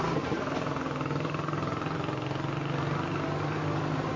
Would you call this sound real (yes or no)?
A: yes